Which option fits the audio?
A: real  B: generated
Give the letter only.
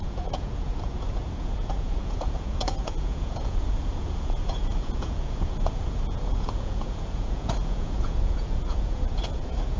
B